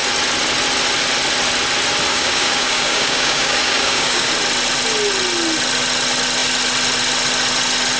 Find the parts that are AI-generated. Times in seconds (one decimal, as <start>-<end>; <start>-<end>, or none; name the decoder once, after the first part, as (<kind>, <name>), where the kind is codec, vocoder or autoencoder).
2.1-4.3 (codec, DAC)